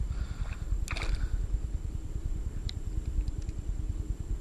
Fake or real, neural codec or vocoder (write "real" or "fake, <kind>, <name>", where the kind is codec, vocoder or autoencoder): fake, vocoder, BigVGAN v2